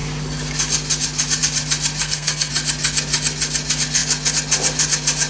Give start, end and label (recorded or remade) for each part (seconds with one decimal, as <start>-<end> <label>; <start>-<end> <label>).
0.0-2.0 recorded; 2.0-2.5 remade; 2.5-5.3 recorded

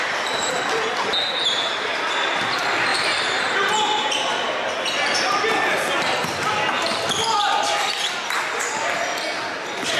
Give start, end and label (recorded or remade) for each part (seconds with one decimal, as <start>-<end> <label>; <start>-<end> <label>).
0.0-2.9 recorded; 2.9-3.4 remade; 3.4-10.0 recorded

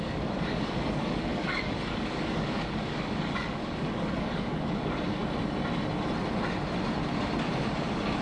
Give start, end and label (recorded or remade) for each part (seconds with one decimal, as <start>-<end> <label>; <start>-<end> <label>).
0.0-5.2 remade; 5.2-7.5 recorded; 7.5-8.2 remade

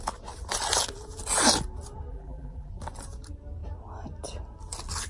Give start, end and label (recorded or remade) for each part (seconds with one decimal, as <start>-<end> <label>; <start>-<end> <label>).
0.0-2.1 recorded; 2.1-2.7 remade; 2.7-5.1 recorded

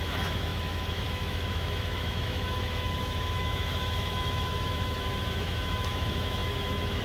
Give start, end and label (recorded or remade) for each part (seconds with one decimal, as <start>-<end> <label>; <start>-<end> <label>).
0.0-7.0 remade

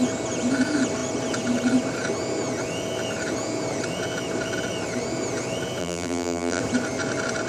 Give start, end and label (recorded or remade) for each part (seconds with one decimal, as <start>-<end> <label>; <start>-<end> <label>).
0.0-5.8 recorded; 5.8-6.6 remade; 6.6-7.5 recorded

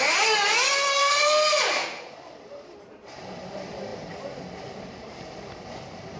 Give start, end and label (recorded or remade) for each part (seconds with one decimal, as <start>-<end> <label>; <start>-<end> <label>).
0.0-1.0 recorded; 1.0-1.6 remade; 1.6-6.2 recorded

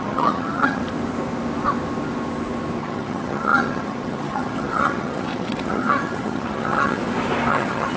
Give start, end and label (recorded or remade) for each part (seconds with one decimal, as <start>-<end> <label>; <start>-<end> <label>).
0.0-0.8 remade; 0.8-2.8 recorded; 2.8-7.0 remade; 7.0-7.5 recorded; 7.5-8.0 remade